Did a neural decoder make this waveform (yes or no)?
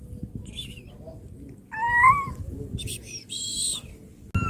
no